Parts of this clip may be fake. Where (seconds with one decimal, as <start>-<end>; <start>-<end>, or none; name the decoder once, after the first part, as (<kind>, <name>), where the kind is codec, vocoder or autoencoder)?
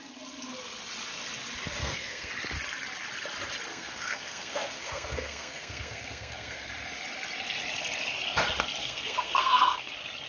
1.8-2.3 (codec, SNAC); 3.7-6.7; 8.8-9.9